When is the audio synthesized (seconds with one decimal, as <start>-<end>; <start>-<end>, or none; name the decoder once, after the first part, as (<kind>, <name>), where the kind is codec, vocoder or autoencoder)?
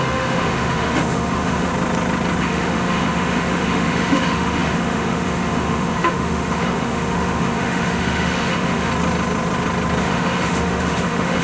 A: 0.0-1.7 (autoencoder, DAC-VAE); 2.4-8.9; 10.0-11.4